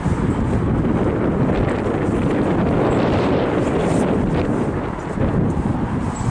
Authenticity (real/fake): real